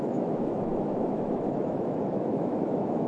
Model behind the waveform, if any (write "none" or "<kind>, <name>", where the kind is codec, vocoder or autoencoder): autoencoder, DAC-VAE